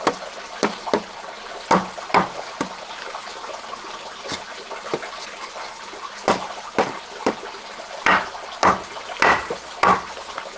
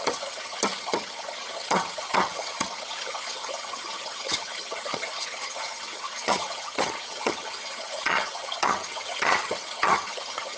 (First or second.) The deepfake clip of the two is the second